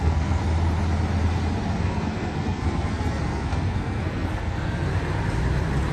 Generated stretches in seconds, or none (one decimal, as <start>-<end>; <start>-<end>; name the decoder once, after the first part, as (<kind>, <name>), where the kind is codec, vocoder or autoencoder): 0.0-0.4 (codec, SNAC); 1.8-4.9